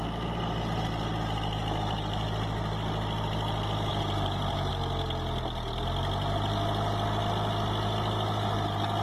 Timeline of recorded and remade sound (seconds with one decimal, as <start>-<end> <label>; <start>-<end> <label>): 0.0-3.9 recorded; 3.9-4.7 remade; 4.7-9.0 recorded